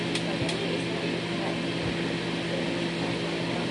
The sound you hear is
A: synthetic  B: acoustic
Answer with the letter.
B